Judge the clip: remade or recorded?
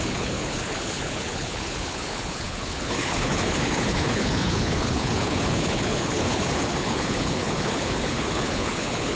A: remade